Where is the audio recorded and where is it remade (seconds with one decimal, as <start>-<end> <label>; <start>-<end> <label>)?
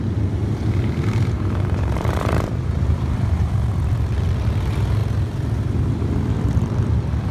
0.0-0.4 recorded; 0.4-3.7 remade; 3.7-7.3 recorded